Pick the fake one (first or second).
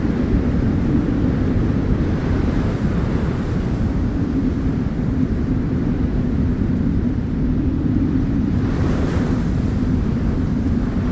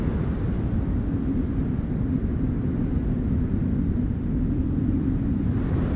first